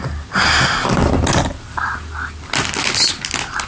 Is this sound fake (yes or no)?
no